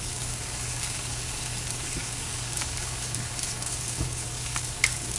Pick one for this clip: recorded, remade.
remade